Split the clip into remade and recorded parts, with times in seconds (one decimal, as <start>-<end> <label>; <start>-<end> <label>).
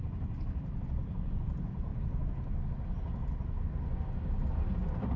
0.0-5.2 recorded